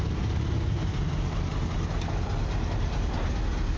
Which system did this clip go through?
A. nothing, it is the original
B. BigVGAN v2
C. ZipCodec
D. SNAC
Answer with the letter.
A